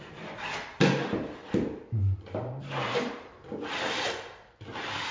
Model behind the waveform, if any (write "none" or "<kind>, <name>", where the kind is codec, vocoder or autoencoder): vocoder, BigVGAN v2